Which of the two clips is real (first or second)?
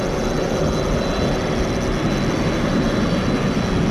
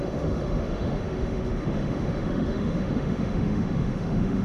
first